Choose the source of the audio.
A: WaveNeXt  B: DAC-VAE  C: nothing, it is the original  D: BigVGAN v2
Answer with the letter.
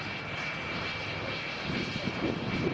C